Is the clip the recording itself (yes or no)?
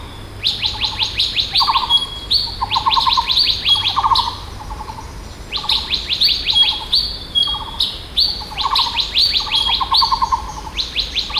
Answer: yes